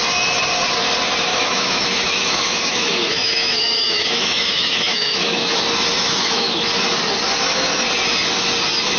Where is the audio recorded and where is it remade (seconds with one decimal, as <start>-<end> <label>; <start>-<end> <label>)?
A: 0.0-1.3 recorded; 1.3-5.5 remade; 5.5-6.0 recorded; 6.0-6.7 remade; 6.7-9.0 recorded